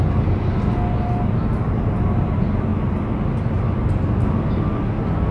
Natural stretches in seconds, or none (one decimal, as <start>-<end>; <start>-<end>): 0.0-5.3